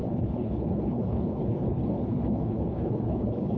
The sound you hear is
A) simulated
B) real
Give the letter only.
A